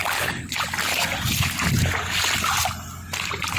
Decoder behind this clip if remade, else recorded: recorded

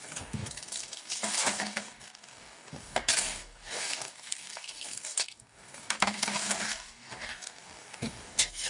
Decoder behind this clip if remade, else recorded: remade, codec, DAC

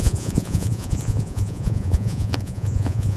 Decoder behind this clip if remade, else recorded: remade, vocoder, Vocos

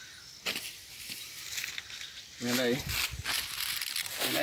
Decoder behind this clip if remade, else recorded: recorded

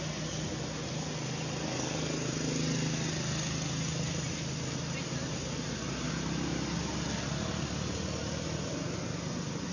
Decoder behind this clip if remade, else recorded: recorded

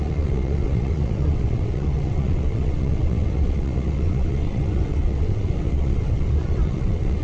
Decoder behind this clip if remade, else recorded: remade, vocoder, WaveNeXt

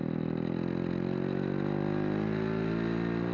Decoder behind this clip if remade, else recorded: recorded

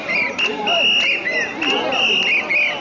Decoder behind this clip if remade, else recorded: recorded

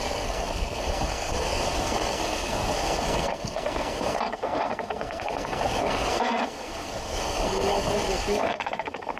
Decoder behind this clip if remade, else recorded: remade, codec, SNAC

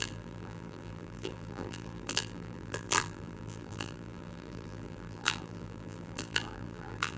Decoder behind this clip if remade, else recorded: remade, vocoder, BigVGAN v2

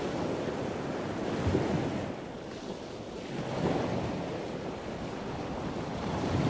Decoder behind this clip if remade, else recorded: recorded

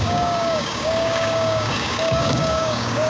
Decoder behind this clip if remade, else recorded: remade, codec, DAC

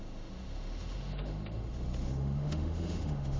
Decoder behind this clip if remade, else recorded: remade, autoencoder, DAC-VAE